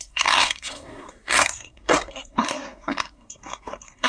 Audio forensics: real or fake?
fake